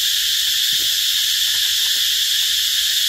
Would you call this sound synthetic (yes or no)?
no